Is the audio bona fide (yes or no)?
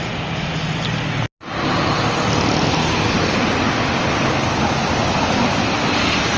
yes